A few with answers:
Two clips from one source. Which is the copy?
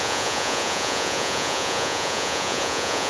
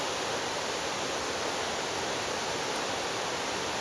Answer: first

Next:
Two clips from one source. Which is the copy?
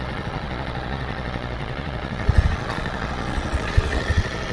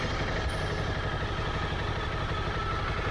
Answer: first